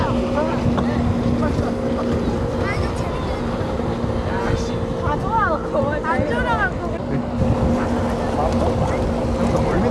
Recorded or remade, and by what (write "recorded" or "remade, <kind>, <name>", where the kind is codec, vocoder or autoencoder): recorded